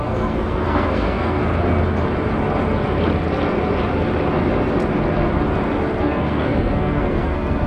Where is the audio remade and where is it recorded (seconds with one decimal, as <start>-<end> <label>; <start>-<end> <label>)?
0.0-1.4 remade; 1.4-6.0 recorded; 6.0-7.7 remade